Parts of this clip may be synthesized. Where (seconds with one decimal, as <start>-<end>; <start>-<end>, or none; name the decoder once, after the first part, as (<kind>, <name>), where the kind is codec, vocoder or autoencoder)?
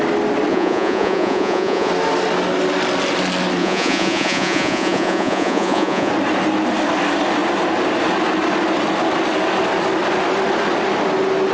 0.5-1.9 (vocoder, Vocos); 3.6-6.1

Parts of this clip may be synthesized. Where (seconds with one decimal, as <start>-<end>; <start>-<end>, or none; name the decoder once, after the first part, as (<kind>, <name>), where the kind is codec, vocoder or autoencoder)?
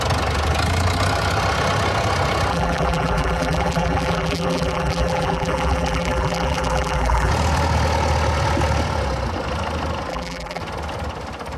2.5-7.3 (vocoder, BigVGAN v2); 10.1-10.6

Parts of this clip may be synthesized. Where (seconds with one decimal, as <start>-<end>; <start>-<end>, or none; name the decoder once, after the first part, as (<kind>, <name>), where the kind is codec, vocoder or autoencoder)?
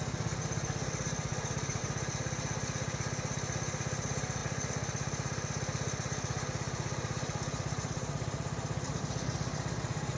1.3-2.2 (vocoder, BigVGAN v2); 4.4-9.0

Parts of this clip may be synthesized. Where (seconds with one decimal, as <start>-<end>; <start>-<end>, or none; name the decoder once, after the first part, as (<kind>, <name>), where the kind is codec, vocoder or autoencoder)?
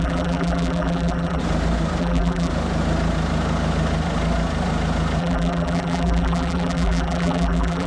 0.0-1.4 (vocoder, BigVGAN v2); 2.0-2.5; 5.2-7.9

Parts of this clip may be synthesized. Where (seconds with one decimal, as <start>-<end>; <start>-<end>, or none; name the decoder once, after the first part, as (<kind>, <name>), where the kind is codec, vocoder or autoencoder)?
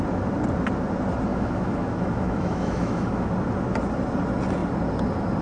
1.3-3.3 (autoencoder, DAC-VAE)